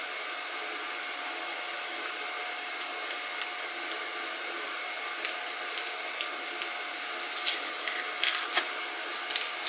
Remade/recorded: recorded